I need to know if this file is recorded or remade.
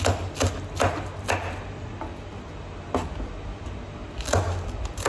recorded